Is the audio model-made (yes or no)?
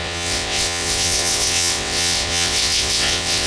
yes